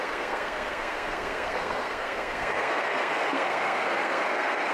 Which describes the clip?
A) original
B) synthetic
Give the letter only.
B